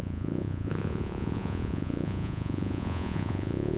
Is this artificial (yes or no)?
yes